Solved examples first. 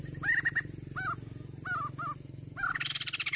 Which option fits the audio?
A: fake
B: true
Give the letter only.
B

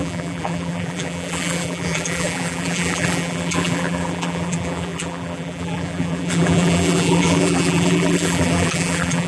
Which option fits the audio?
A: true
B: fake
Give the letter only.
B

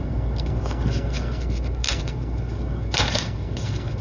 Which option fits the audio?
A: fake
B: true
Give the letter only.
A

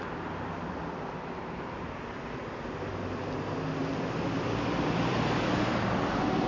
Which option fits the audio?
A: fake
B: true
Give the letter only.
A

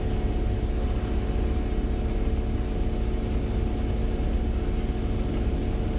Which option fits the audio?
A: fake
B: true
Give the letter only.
B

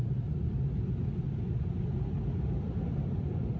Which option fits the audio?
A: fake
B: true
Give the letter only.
A